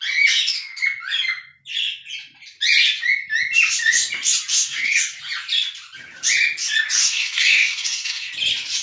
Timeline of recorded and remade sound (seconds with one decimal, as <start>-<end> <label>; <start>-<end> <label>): 0.0-4.5 recorded; 4.5-5.0 remade; 5.0-7.0 recorded; 7.0-8.3 remade; 8.3-8.8 recorded